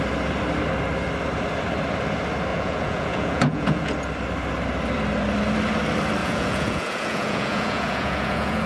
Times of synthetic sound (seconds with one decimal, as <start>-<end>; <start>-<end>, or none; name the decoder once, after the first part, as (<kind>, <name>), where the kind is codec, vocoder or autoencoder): 2.5-3.9 (vocoder, Vocos); 6.2-8.7